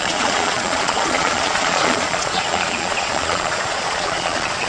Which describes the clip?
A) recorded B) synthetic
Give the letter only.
B